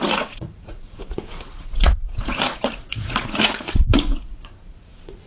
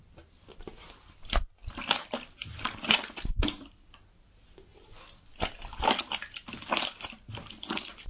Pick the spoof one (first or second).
first